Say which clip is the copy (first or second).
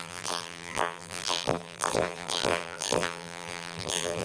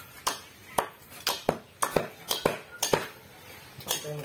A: first